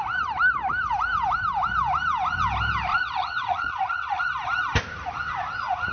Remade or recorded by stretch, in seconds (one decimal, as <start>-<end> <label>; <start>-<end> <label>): 0.0-2.9 recorded; 2.9-4.2 remade; 4.2-5.9 recorded